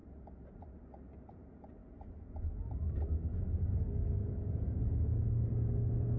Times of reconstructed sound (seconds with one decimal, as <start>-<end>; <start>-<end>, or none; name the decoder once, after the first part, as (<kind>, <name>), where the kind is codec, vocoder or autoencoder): 0.0-0.8 (vocoder, BigVGAN v2)